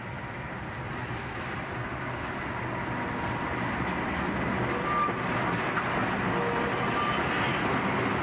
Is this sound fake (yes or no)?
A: no